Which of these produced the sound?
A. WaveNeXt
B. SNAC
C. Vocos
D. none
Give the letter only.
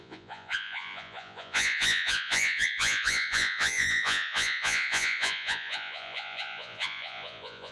C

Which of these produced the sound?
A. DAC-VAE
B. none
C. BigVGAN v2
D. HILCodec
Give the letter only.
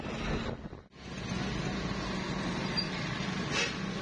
B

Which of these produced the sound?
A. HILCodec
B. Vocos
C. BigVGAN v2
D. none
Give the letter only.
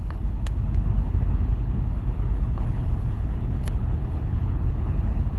A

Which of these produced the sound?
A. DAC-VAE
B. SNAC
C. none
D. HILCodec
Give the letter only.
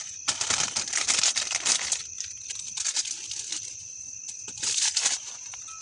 C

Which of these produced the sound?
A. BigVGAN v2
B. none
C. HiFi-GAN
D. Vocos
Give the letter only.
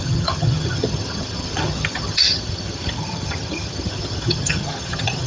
C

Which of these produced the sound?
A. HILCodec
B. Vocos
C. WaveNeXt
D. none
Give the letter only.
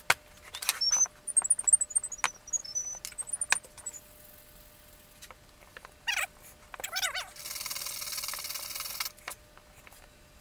D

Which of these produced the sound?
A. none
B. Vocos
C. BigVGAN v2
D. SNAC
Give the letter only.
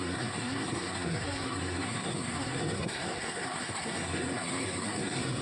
D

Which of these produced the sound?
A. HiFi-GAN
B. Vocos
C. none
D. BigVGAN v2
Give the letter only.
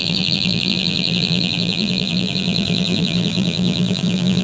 D